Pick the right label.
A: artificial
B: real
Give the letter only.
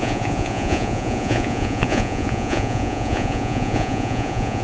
A